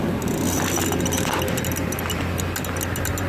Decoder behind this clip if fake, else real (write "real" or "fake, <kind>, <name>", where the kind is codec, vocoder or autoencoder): real